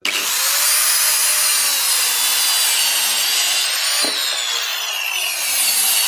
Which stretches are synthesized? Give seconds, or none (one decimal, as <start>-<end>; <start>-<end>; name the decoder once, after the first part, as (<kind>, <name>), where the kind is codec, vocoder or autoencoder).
none